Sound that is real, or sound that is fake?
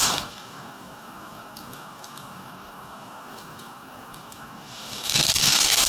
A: fake